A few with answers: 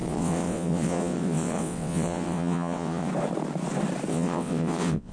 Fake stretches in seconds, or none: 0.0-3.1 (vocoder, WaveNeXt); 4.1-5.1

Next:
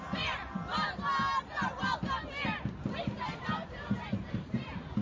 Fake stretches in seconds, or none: 0.0-0.4 (vocoder, BigVGAN v2); 3.4-5.0

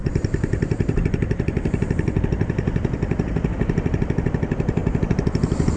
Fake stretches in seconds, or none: 0.0-2.2 (vocoder, BigVGAN v2)

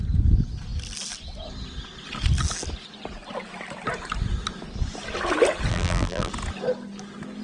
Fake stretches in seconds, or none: 5.7-6.3 (vocoder, BigVGAN v2)

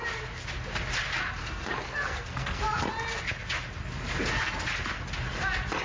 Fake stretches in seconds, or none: 1.4-2.6 (codec, SNAC)

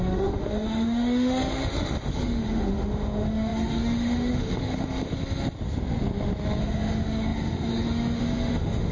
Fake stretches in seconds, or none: 0.0-5.1 (autoencoder, DAC-VAE); 6.6-8.9

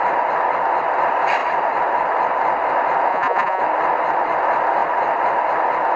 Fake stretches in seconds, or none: 3.1-3.6 (vocoder, Vocos)

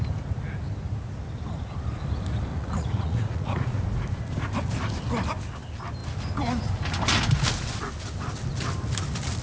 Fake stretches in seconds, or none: 2.5-3.8 (vocoder, Vocos)